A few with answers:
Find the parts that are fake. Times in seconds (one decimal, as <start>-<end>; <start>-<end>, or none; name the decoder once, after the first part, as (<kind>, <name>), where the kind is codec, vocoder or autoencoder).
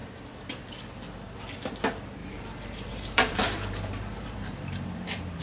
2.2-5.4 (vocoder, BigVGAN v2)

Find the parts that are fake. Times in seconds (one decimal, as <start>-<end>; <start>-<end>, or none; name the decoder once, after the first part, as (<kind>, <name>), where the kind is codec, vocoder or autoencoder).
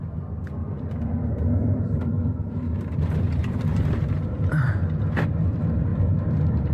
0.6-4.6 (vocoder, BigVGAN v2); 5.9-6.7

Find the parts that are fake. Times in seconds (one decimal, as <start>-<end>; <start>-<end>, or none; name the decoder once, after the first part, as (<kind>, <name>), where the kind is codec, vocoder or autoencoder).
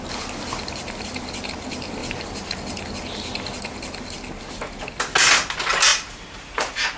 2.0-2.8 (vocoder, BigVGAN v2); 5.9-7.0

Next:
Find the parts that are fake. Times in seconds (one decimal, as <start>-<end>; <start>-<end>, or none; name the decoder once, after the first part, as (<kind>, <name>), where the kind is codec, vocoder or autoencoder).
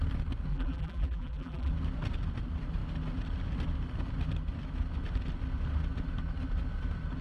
0.5-1.7 (vocoder, BigVGAN v2)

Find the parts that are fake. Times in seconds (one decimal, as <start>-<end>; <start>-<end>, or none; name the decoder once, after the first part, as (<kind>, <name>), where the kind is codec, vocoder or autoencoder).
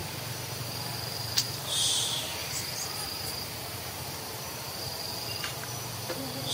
0.0-6.5 (vocoder, BigVGAN v2)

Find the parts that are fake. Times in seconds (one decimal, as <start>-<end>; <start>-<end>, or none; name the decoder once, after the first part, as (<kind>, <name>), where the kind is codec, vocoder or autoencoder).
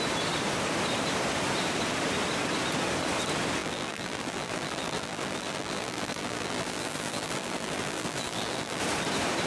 3.6-8.8 (vocoder, BigVGAN v2)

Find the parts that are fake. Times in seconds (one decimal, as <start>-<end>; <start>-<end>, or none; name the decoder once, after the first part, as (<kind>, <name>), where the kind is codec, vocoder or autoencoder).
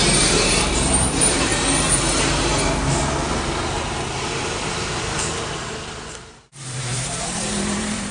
0.0-1.5 (vocoder, BigVGAN v2); 2.1-2.5; 6.1-8.1